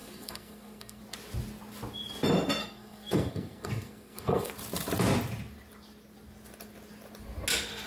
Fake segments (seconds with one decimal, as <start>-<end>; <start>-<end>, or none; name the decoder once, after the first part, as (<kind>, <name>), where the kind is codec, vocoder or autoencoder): 0.0-1.0 (codec, SNAC); 2.6-4.5